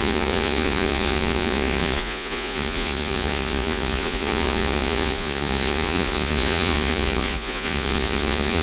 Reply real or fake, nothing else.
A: fake